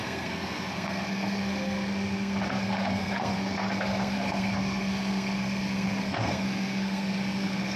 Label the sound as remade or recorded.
remade